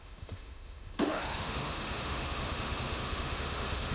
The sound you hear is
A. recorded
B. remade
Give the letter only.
B